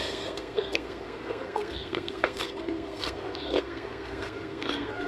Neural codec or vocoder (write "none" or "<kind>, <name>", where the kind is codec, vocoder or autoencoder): codec, SNAC